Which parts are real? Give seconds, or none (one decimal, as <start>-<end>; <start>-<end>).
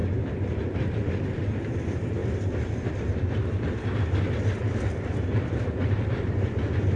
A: 0.0-2.2; 5.7-7.0